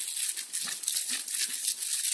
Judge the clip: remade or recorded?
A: recorded